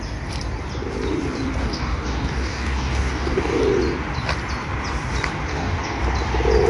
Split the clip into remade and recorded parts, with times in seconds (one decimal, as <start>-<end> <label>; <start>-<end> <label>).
0.0-1.6 recorded; 1.6-3.6 remade; 3.6-5.5 recorded; 5.5-6.0 remade; 6.0-6.7 recorded